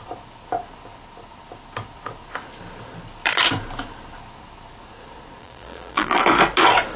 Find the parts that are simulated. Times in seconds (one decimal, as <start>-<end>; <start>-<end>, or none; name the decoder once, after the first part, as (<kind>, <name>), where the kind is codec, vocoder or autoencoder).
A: 5.4-6.2 (vocoder, BigVGAN v2)